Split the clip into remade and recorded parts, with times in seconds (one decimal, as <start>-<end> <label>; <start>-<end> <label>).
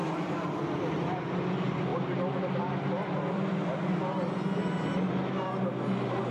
0.0-6.3 recorded